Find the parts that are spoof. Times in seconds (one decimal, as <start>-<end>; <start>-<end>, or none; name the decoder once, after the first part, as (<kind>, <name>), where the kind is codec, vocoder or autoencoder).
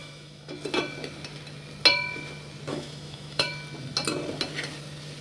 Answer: 0.0-0.5 (autoencoder, DAC-VAE); 2.7-3.5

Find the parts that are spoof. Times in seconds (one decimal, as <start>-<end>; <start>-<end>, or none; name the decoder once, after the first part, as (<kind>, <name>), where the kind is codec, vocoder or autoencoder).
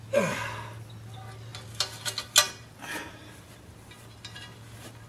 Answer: none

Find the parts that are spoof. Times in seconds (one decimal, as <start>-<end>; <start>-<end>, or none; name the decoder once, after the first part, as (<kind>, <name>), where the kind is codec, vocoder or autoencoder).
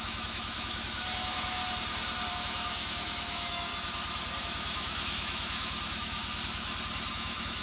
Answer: 0.0-1.6 (autoencoder, DAC-VAE); 2.3-3.7; 4.4-6.2; 7.1-7.6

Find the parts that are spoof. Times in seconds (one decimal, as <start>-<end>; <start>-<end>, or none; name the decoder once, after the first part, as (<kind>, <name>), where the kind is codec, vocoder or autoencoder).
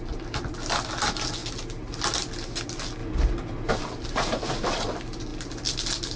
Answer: none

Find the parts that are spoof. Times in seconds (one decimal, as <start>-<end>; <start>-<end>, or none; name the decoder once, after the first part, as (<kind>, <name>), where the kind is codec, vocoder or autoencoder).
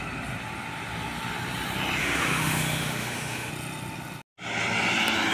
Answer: 2.0-3.5 (autoencoder, DAC-VAE)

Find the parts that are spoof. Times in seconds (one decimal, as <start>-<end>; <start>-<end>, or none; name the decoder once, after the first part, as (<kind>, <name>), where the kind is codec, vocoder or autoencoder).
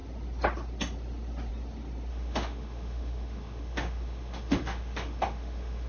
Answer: 2.1-5.9 (autoencoder, DAC-VAE)